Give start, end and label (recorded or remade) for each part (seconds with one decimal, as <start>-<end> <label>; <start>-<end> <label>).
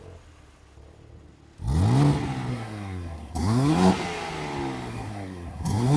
0.0-2.5 recorded; 2.5-3.9 remade; 3.9-4.9 recorded; 4.9-6.0 remade